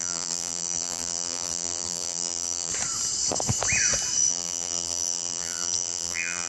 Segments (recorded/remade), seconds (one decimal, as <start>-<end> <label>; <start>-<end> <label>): 0.0-2.7 remade; 2.7-4.3 recorded; 4.3-6.5 remade